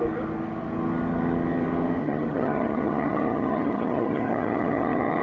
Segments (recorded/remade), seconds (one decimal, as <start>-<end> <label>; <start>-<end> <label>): 0.0-2.0 recorded; 2.0-5.2 remade